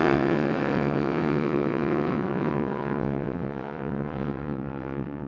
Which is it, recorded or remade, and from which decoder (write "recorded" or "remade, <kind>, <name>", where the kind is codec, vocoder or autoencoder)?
remade, vocoder, WaveNeXt